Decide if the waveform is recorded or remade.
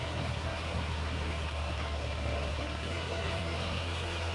remade